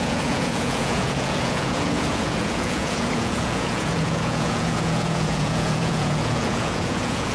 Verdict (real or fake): fake